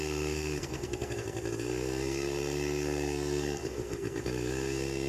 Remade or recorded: remade